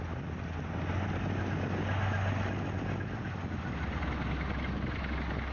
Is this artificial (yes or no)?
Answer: no